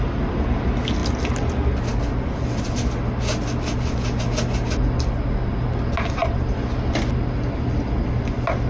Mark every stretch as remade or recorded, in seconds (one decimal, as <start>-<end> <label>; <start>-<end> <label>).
0.0-8.7 recorded